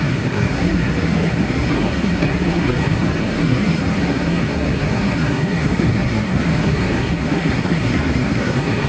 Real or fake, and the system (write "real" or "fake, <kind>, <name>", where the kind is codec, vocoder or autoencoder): fake, codec, SNAC